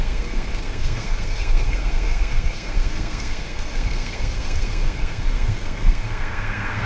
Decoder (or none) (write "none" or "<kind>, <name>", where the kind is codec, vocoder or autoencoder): codec, SNAC